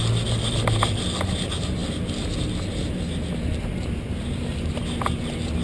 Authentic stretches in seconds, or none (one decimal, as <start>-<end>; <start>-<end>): 0.0-5.6